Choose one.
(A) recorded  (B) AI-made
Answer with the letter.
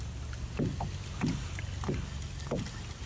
A